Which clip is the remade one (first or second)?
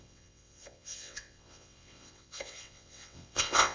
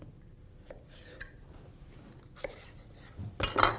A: first